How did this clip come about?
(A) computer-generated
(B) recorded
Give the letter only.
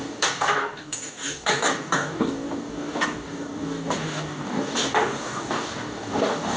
A